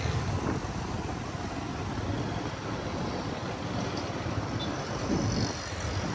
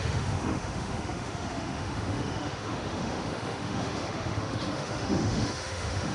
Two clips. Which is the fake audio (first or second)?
second